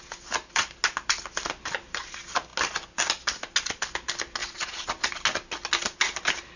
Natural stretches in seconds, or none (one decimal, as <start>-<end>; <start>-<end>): 0.0-4.4; 5.1-6.6